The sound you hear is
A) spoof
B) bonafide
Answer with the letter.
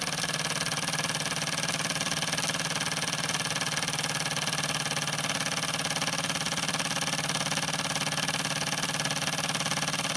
B